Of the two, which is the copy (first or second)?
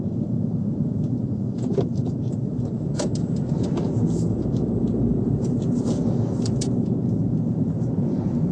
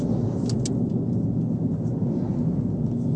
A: first